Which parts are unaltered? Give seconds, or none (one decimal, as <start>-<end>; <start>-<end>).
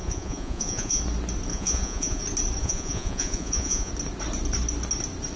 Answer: 1.0-1.5; 2.2-2.6; 3.9-5.4